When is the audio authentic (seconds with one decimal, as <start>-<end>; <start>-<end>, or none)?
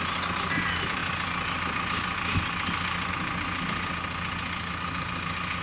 0.0-5.6